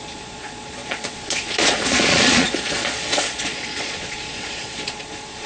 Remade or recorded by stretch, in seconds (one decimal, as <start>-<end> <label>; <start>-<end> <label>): 0.0-5.5 remade